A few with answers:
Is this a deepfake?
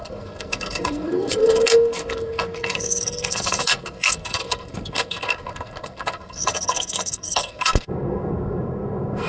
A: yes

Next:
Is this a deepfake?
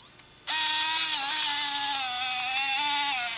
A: no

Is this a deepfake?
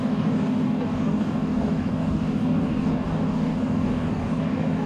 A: yes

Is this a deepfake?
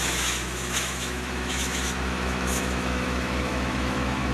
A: yes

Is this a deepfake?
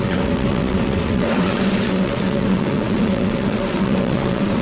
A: yes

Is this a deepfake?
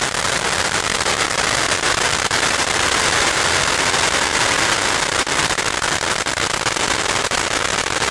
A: no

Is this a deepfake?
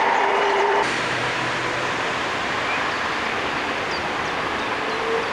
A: yes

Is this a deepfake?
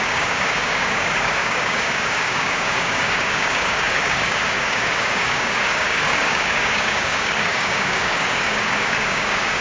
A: yes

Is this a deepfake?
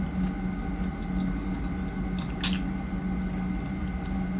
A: no